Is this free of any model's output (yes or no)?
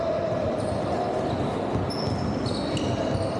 yes